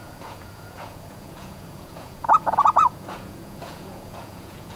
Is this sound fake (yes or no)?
yes